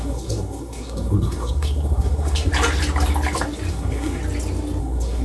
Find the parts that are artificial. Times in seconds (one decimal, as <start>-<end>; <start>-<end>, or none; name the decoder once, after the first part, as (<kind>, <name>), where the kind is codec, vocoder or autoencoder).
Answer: 0.0-2.5 (codec, SNAC); 3.7-4.2; 4.8-5.2